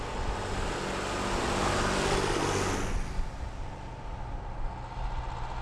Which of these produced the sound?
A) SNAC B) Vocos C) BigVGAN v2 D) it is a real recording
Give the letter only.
D